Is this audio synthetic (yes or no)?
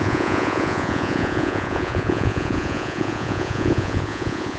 yes